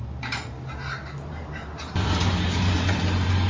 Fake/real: fake